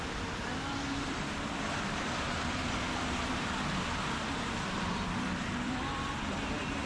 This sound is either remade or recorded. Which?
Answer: remade